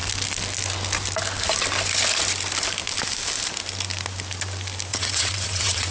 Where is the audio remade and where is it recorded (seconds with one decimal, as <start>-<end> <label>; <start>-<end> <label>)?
0.0-4.9 recorded; 4.9-5.9 remade